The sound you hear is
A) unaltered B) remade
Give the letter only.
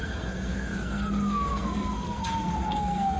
B